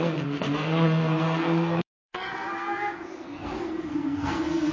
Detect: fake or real fake